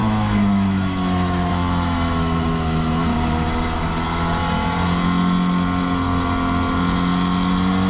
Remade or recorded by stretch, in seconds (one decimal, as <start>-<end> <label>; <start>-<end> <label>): 0.0-3.1 remade; 3.1-7.9 recorded